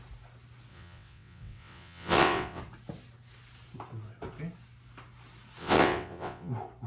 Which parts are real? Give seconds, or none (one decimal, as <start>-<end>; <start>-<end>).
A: 0.0-0.7; 2.6-5.6; 6.5-6.9